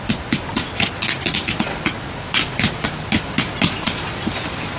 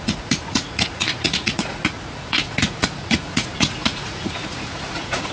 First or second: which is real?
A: first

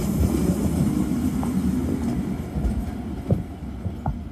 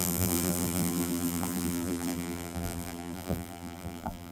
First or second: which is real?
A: first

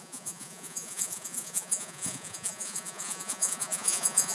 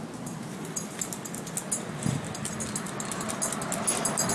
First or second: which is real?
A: second